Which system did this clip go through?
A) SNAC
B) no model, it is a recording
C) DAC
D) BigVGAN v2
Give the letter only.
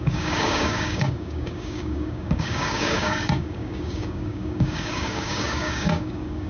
C